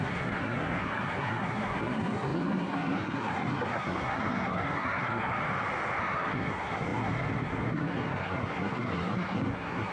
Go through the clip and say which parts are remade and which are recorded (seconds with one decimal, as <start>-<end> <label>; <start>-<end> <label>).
0.0-5.4 remade; 5.4-6.0 recorded; 6.0-9.9 remade